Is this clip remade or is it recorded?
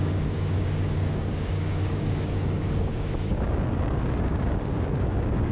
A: remade